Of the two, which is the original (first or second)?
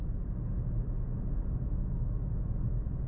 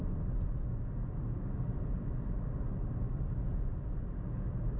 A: second